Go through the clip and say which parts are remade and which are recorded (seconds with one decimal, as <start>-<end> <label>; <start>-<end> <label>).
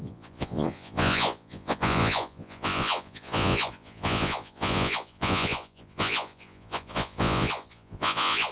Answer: 0.0-8.5 remade